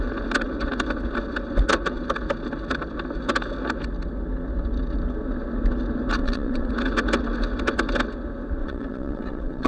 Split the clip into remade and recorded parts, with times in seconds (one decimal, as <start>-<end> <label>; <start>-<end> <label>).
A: 0.0-6.2 recorded; 6.2-6.7 remade; 6.7-8.6 recorded; 8.6-9.7 remade